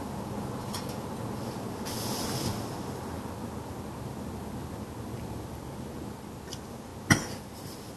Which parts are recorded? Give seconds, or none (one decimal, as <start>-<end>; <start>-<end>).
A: 0.0-8.0